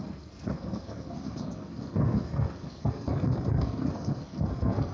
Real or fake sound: fake